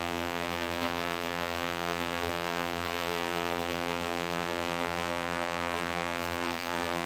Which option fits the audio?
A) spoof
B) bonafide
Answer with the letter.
A